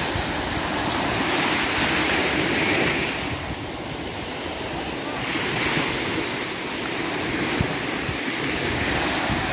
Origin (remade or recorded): recorded